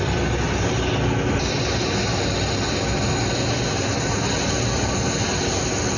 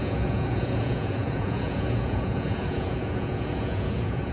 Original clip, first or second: first